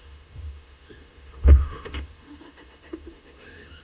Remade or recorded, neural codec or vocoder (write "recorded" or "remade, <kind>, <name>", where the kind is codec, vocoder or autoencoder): remade, autoencoder, DAC-VAE